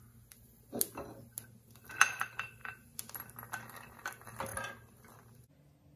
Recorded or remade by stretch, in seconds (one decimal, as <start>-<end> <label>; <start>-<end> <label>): 0.0-6.0 recorded

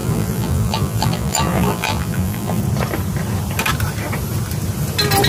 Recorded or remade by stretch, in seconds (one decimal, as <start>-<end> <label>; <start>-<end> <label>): 0.0-2.6 remade; 2.6-5.3 recorded

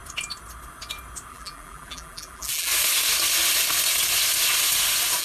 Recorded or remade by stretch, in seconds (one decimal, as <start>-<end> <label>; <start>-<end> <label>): 0.0-1.3 recorded; 1.3-2.7 remade; 2.7-5.2 recorded

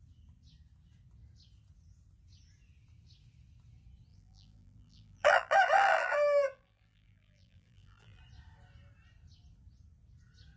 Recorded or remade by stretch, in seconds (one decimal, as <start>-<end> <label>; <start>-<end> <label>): 0.0-4.1 recorded; 4.1-8.2 remade; 8.2-10.6 recorded

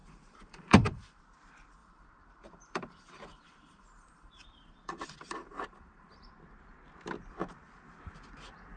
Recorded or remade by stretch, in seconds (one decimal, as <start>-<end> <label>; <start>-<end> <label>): 0.0-1.2 remade; 1.2-1.8 recorded; 1.8-6.3 remade; 6.3-8.8 recorded